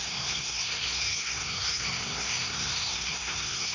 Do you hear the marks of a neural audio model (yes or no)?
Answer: yes